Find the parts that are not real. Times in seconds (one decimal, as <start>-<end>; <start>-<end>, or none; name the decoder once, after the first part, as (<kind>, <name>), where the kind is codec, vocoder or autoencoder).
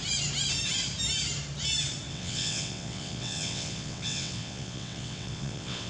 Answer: 2.1-5.9 (vocoder, WaveNeXt)